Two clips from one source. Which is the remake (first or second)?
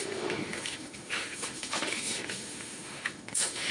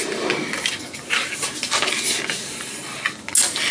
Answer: first